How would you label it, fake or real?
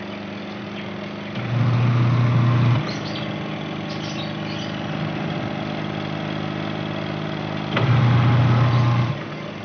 real